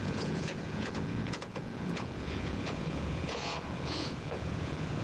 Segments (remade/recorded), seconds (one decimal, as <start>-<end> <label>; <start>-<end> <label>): 0.0-5.0 remade